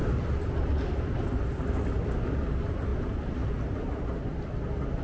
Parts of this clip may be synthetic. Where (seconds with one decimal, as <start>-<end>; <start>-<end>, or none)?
none